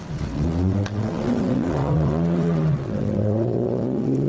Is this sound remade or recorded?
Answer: remade